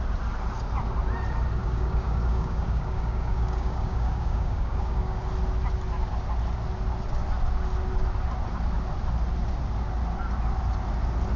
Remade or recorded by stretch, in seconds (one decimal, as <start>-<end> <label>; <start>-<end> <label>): 0.0-1.6 recorded; 1.6-5.2 remade; 5.2-11.4 recorded